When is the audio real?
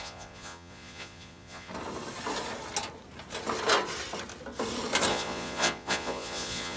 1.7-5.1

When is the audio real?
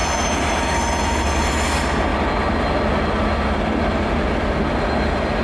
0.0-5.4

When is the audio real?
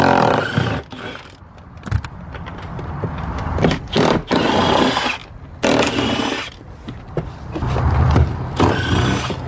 0.0-9.5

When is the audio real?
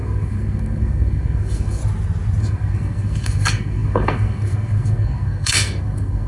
1.8-2.4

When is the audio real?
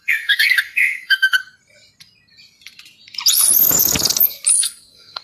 1.4-4.5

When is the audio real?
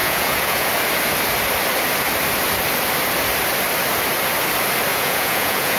0.7-4.9